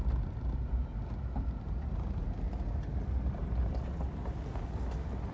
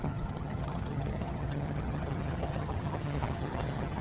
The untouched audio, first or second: first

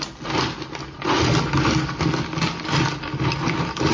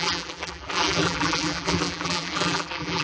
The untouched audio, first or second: first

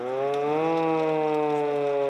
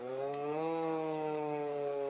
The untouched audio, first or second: first